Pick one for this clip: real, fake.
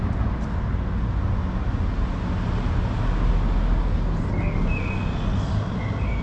real